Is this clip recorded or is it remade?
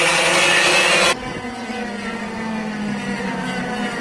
recorded